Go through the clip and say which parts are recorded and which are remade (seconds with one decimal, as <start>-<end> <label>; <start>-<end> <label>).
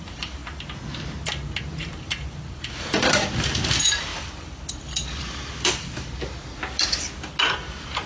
0.0-0.4 remade; 0.4-1.6 recorded; 1.6-6.4 remade; 6.4-7.4 recorded; 7.4-8.1 remade